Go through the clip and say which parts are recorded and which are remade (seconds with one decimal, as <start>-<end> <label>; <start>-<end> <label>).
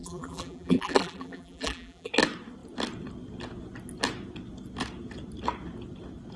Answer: 0.0-2.1 remade; 2.1-6.4 recorded